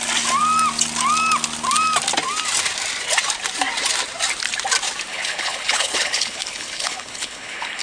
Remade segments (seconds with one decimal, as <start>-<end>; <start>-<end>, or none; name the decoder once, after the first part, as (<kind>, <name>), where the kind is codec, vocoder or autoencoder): 5.1-7.8 (codec, HILCodec)